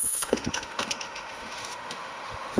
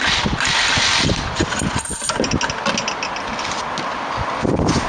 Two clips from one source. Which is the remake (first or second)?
first